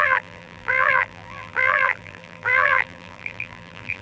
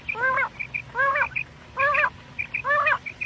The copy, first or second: first